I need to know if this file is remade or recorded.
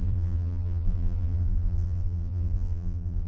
remade